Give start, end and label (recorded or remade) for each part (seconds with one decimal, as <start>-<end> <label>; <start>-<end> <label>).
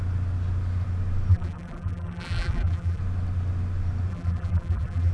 0.0-1.3 recorded; 1.3-3.0 remade; 3.0-4.1 recorded; 4.1-5.1 remade